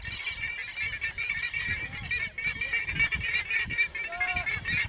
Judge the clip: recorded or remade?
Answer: recorded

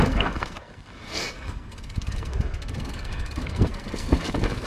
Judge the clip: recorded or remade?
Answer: remade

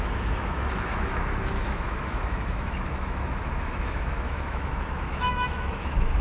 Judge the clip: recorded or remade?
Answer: remade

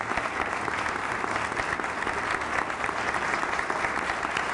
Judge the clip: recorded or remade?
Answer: recorded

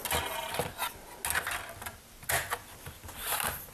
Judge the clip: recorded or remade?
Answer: recorded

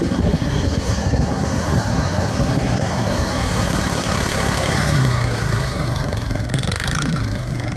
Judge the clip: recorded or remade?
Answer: remade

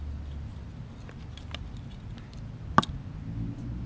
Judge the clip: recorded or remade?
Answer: recorded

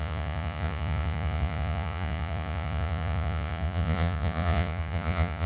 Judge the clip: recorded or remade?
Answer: remade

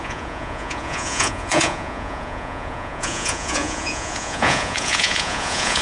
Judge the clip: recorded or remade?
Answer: remade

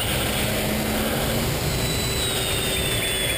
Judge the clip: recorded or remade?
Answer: recorded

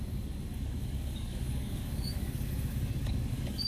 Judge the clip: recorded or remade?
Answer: remade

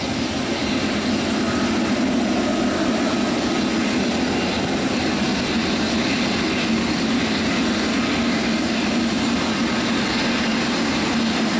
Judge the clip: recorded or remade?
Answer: recorded